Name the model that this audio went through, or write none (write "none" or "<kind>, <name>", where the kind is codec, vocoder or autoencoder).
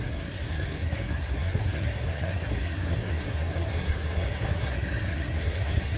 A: codec, SNAC